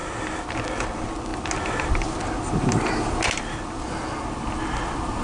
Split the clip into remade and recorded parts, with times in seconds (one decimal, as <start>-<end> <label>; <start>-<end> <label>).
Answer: 0.0-5.2 recorded